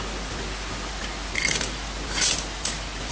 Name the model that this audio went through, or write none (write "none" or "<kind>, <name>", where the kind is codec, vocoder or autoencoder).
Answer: none